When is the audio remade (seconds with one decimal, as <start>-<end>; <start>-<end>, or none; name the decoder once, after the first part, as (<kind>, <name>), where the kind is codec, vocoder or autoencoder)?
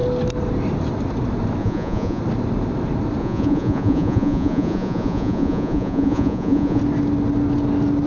1.6-2.2 (vocoder, Vocos); 3.2-6.8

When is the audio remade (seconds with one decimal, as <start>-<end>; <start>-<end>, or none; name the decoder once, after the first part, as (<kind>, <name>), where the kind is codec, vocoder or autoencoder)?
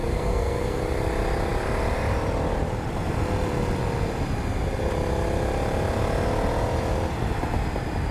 0.0-0.8 (codec, SNAC)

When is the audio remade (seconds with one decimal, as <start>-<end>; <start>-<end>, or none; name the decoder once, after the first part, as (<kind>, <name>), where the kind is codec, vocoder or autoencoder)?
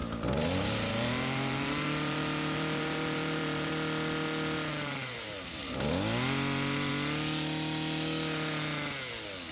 0.0-3.7 (vocoder, BigVGAN v2); 4.7-5.9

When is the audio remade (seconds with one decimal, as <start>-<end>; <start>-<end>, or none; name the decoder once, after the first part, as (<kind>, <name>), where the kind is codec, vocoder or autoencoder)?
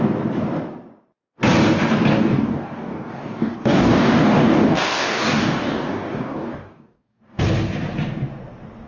2.1-7.4 (codec, DAC)